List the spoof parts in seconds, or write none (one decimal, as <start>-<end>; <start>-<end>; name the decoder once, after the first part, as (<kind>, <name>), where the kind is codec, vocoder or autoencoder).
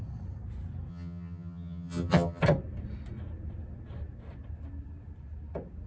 0.9-2.4 (vocoder, HiFi-GAN)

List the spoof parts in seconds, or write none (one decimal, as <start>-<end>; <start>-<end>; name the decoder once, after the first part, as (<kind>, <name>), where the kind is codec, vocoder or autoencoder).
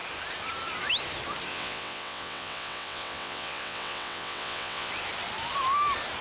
1.5-4.9 (vocoder, WaveNeXt)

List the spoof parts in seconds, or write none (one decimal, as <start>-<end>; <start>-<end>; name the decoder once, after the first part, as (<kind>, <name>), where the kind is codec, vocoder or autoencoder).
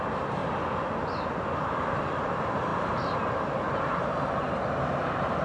none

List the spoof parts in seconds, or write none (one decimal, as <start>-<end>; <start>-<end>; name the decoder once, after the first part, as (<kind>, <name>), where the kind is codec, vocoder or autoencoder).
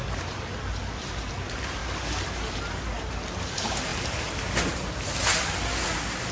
none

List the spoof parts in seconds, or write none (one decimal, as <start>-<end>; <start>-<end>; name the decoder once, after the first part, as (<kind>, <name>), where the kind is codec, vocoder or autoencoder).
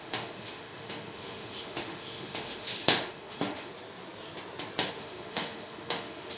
0.0-3.7 (autoencoder, DAC-VAE); 4.9-6.4